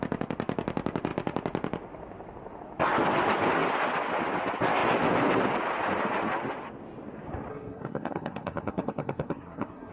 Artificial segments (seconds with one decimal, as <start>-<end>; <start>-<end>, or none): 7.5-9.9